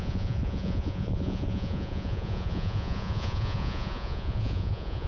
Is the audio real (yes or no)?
no